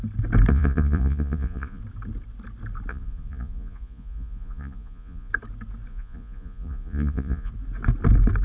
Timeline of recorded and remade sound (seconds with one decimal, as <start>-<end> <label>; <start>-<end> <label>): 0.0-0.5 recorded; 0.5-1.8 remade; 1.8-2.9 recorded; 2.9-5.3 remade; 5.3-5.9 recorded; 5.9-7.5 remade; 7.5-8.4 recorded